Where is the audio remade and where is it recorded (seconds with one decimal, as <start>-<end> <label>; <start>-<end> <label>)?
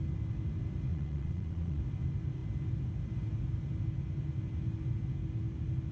0.0-0.9 recorded; 0.9-1.8 remade; 1.8-5.9 recorded